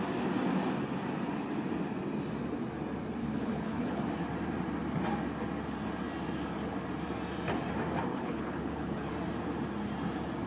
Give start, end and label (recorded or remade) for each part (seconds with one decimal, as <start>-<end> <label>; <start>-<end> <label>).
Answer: 0.0-3.2 recorded; 3.2-4.0 remade; 4.0-8.1 recorded; 8.1-9.1 remade; 9.1-10.5 recorded